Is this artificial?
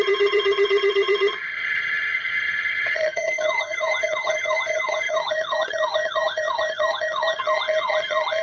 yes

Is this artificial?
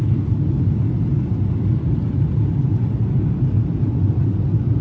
no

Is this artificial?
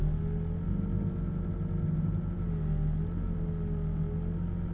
no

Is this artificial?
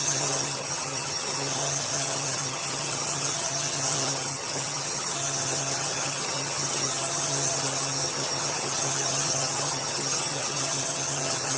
yes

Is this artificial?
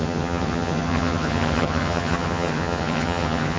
yes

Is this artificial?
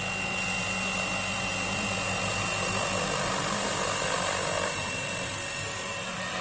no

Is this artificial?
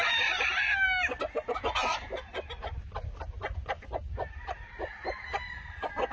no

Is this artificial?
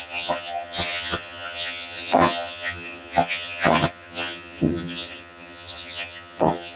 yes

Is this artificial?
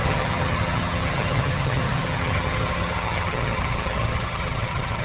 yes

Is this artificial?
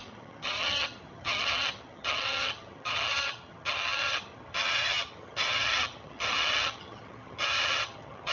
yes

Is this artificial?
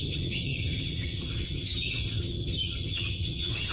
yes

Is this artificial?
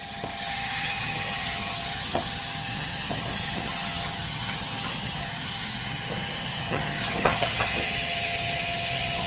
yes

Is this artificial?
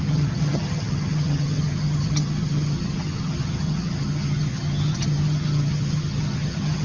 yes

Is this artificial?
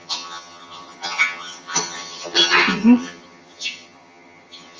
yes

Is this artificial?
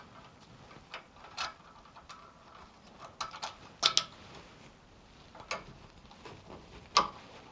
no